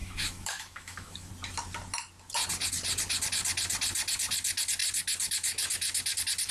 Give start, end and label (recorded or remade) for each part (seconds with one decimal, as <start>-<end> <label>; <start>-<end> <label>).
0.0-1.3 remade; 1.3-6.5 recorded